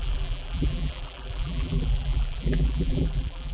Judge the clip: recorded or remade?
remade